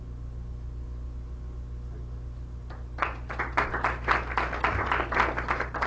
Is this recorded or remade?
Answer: recorded